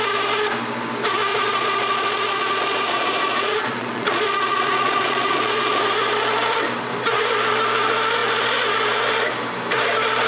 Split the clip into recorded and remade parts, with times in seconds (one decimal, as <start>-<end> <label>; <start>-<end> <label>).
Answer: 0.0-1.3 recorded; 1.3-5.8 remade; 5.8-10.3 recorded